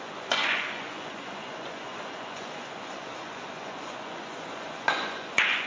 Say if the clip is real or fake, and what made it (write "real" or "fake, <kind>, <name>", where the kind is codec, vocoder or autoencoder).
fake, vocoder, Vocos